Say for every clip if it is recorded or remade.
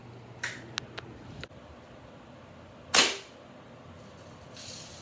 recorded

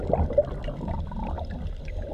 recorded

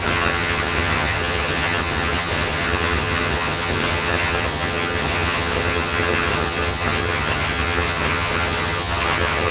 remade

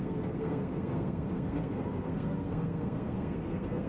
remade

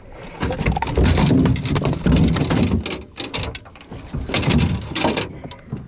recorded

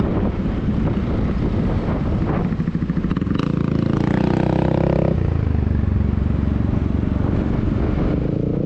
recorded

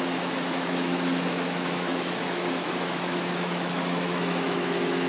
remade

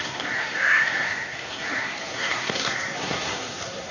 remade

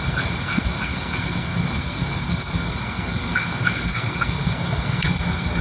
remade